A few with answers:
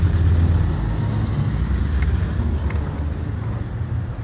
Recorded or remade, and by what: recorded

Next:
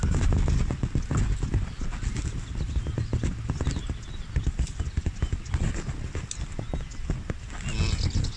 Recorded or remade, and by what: recorded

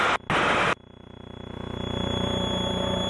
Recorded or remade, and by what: recorded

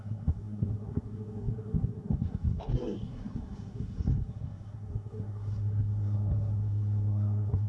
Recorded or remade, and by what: remade, codec, SNAC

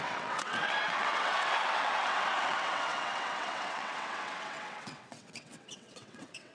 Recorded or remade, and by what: remade, vocoder, WaveNeXt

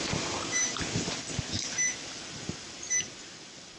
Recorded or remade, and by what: recorded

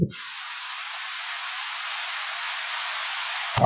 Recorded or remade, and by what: recorded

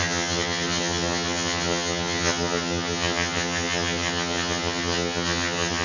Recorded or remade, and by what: remade, vocoder, HiFi-GAN